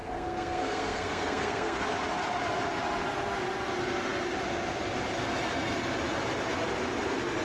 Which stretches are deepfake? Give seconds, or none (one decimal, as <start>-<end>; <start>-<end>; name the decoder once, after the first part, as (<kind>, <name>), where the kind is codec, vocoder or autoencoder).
0.0-1.8 (codec, SNAC)